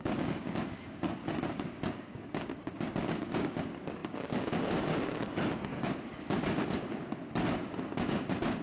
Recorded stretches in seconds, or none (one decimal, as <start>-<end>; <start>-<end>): 1.2-1.7; 7.2-7.8